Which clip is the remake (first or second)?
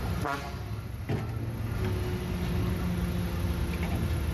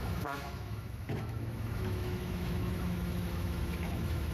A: second